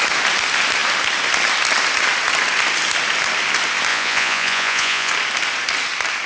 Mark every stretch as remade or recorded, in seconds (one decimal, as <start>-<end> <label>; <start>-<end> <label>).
0.0-3.9 recorded; 3.9-5.1 remade; 5.1-6.3 recorded